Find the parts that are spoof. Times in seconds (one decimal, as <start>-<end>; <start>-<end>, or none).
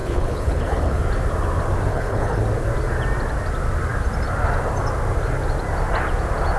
0.0-1.0; 1.9-2.4